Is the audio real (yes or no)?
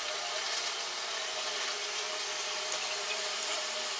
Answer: yes